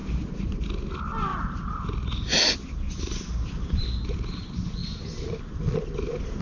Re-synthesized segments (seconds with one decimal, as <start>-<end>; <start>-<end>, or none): 0.0-0.5; 1.3-1.8; 4.8-5.4